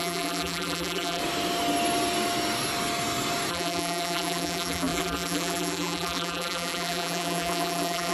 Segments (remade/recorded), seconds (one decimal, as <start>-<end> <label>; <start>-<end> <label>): 0.0-1.2 remade; 1.2-3.5 recorded; 3.5-8.1 remade